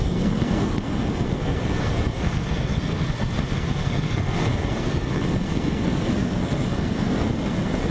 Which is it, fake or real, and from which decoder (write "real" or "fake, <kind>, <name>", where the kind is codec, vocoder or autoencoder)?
fake, codec, SNAC